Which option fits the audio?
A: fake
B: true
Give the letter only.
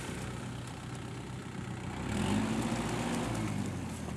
B